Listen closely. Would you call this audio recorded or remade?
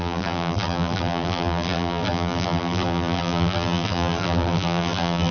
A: remade